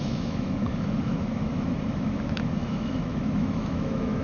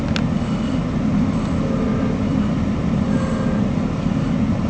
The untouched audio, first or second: second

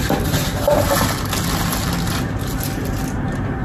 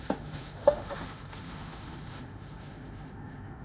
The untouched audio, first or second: first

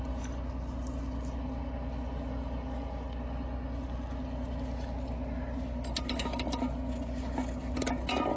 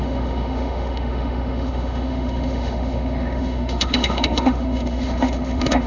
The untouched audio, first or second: first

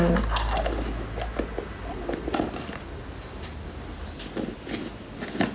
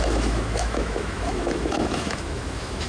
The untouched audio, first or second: first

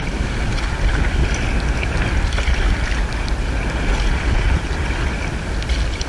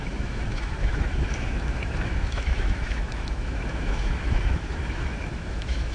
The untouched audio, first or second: first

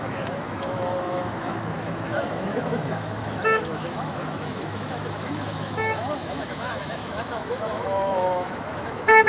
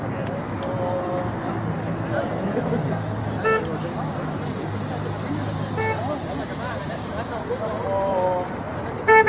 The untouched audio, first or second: second